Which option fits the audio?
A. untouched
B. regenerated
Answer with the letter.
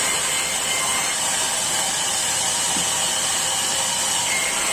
B